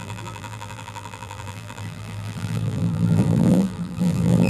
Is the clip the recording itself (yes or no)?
no